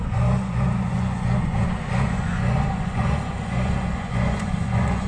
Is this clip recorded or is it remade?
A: remade